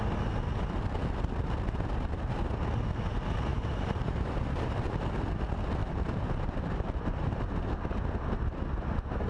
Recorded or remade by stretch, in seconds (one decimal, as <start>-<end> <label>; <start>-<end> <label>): 0.0-3.5 recorded; 3.5-5.2 remade; 5.2-5.8 recorded; 5.8-7.5 remade; 7.5-9.3 recorded